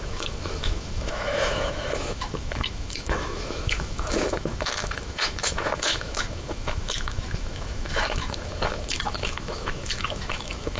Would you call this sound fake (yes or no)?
yes